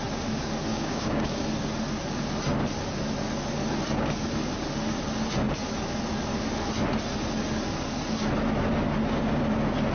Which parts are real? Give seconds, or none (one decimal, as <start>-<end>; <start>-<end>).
0.0-0.7; 1.4-9.9